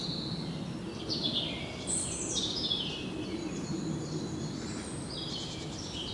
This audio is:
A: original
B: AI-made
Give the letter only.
A